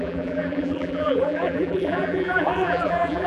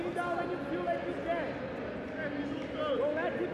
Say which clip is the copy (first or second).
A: first